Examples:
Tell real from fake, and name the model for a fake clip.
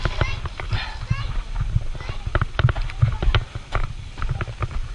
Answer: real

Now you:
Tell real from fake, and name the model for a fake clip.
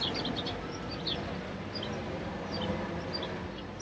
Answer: real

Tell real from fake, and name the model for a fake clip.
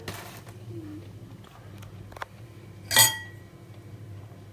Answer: real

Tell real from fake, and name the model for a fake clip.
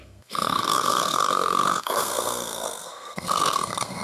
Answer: fake, codec, SNAC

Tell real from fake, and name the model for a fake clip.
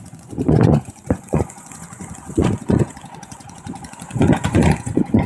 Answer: fake, vocoder, Vocos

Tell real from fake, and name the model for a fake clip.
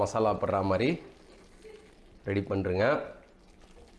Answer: real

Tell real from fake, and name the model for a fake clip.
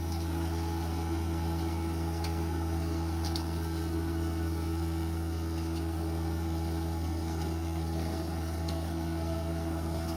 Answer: fake, codec, SNAC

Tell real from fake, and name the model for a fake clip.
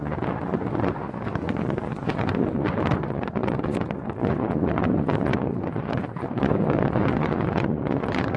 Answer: fake, vocoder, Vocos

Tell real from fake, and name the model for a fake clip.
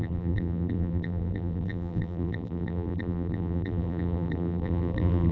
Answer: fake, vocoder, BigVGAN v2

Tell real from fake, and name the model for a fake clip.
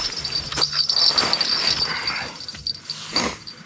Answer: real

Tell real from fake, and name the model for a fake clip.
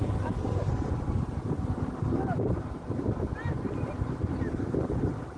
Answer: real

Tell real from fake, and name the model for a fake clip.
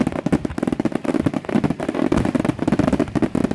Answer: real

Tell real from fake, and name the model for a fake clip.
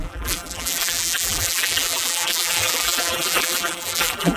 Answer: fake, vocoder, BigVGAN v2